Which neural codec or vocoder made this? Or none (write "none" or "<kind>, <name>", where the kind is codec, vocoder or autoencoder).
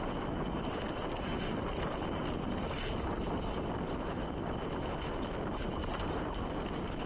none